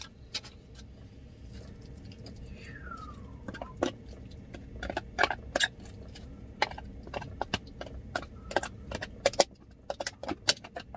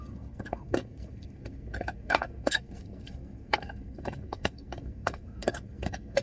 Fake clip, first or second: second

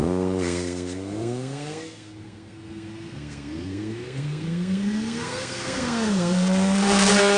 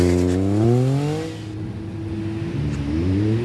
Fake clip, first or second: first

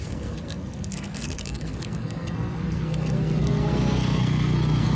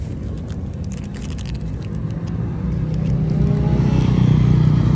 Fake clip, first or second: first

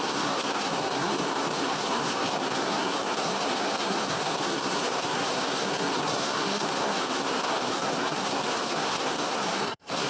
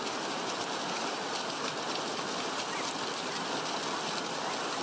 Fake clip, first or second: first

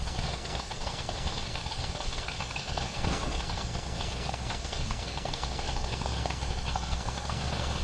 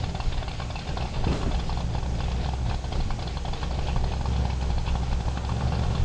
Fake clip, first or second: first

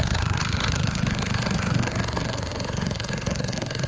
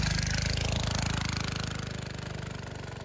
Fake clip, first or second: first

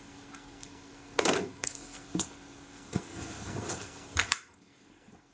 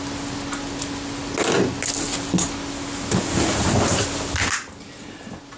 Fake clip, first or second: first